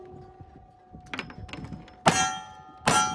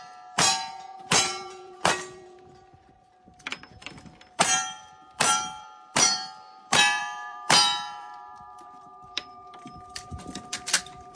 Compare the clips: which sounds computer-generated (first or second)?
second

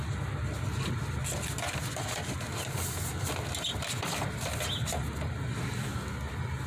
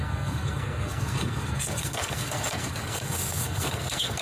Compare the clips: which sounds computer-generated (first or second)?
second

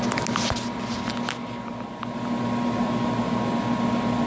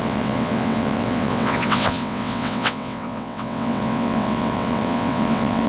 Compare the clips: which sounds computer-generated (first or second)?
second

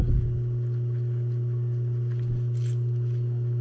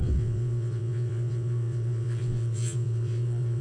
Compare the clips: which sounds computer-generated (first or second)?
second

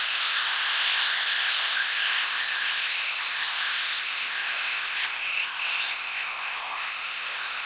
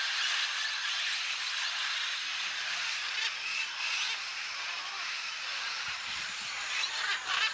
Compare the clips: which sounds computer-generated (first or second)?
first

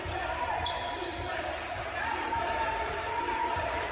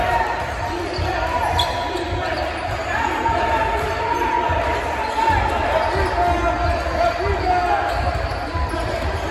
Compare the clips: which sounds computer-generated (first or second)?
first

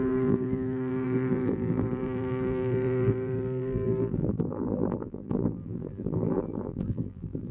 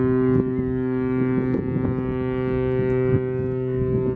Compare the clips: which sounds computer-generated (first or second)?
first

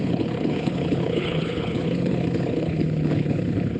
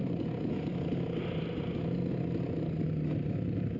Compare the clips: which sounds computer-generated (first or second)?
first